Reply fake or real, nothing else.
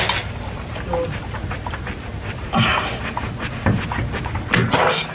real